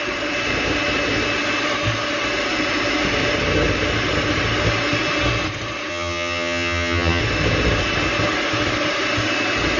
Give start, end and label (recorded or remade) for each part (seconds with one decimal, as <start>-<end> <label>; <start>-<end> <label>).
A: 0.0-5.9 recorded; 5.9-7.2 remade; 7.2-9.8 recorded